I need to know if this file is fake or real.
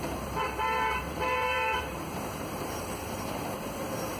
fake